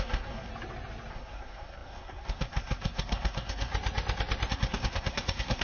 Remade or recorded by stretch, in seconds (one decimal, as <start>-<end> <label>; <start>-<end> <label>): 0.0-0.5 remade; 0.5-1.1 recorded; 1.1-3.7 remade; 3.7-4.5 recorded; 4.5-5.6 remade